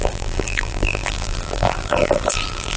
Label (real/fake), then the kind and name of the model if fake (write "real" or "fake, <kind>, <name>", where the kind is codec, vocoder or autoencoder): fake, vocoder, BigVGAN v2